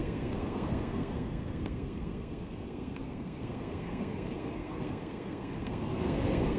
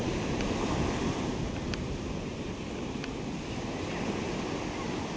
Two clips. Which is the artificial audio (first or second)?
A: first